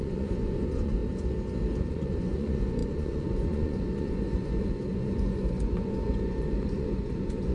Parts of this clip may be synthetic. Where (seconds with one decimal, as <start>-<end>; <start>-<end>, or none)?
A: 0.0-1.0; 1.9-7.5